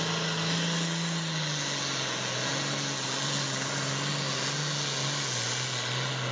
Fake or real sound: real